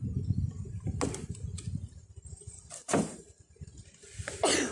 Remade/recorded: recorded